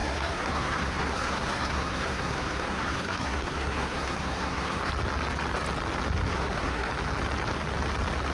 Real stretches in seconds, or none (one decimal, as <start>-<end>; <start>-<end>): 4.9-6.3; 6.9-8.3